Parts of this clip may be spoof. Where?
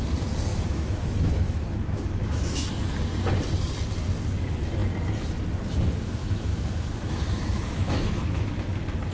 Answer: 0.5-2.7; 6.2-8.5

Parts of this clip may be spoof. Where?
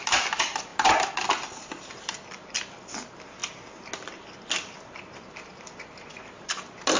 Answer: none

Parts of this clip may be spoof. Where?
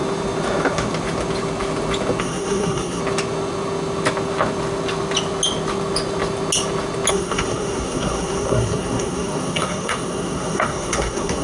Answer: 2.2-3.0; 7.1-11.4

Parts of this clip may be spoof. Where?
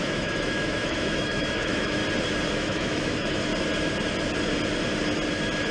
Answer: 0.0-2.0; 2.5-3.5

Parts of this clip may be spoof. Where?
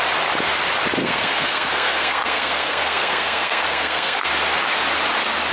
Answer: 1.0-4.3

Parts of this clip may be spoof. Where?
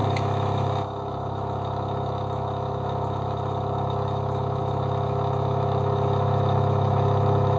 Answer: 0.0-7.6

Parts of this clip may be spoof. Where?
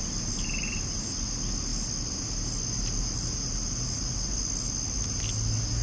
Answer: none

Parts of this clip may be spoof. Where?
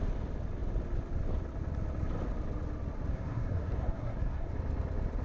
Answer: 3.1-4.5